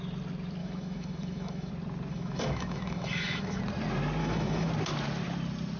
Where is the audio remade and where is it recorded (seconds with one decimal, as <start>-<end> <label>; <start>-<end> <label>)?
0.0-0.6 recorded; 0.6-1.7 remade; 1.7-2.1 recorded; 2.1-3.6 remade; 3.6-4.2 recorded; 4.2-4.7 remade; 4.7-5.8 recorded